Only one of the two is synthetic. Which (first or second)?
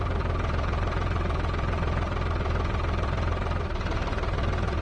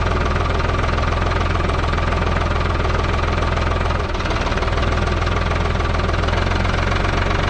first